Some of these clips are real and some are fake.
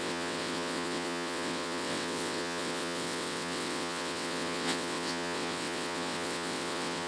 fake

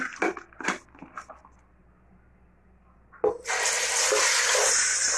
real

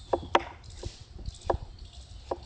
real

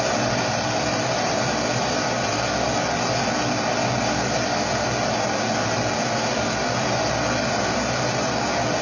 real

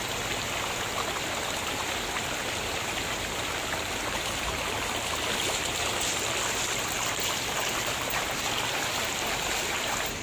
real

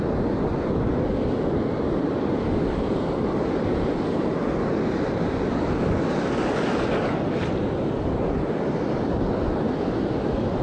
real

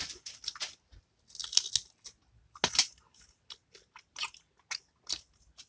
real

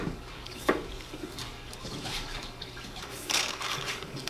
fake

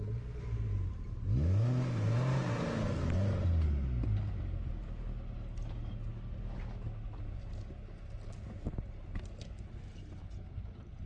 real